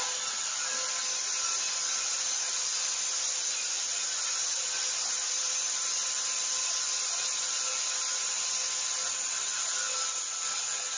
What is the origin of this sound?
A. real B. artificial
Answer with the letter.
A